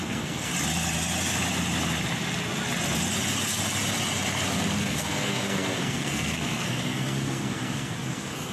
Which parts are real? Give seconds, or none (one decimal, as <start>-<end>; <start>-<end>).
0.5-4.8